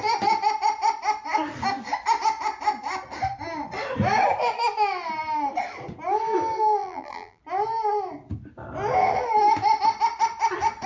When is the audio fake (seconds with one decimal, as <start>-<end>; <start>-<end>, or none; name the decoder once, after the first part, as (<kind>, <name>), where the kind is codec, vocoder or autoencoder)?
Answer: 6.8-7.4 (vocoder, BigVGAN v2)